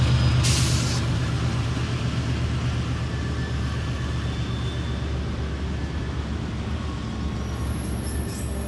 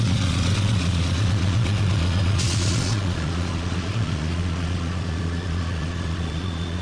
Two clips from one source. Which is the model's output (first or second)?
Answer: second